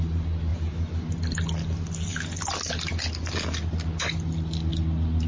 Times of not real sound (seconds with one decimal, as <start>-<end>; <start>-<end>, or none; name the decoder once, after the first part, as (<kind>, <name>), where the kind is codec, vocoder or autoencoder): 0.5-1.1 (vocoder, BigVGAN v2)